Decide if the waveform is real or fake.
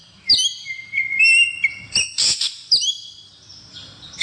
real